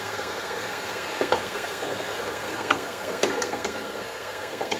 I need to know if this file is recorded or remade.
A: remade